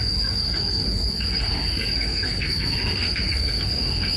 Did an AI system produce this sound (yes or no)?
yes